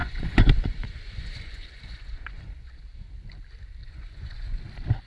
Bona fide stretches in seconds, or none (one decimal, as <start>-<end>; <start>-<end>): 3.1-3.8; 4.6-5.1